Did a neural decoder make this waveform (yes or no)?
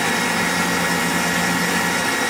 no